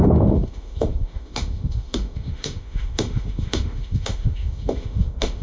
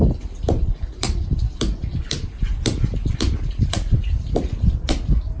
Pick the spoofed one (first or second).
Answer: first